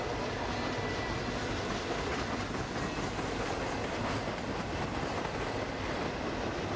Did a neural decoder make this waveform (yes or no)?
no